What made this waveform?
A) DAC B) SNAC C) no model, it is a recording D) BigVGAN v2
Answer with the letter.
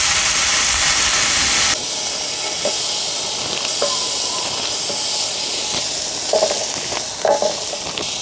C